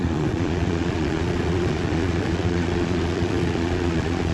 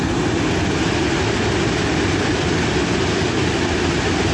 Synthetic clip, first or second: first